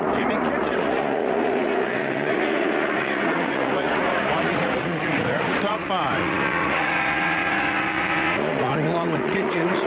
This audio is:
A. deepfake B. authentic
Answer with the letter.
A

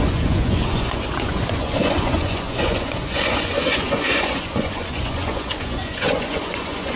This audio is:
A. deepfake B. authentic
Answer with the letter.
A